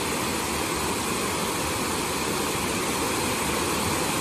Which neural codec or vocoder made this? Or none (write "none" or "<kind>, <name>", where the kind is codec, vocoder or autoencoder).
none